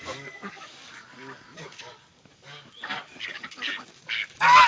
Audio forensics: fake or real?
fake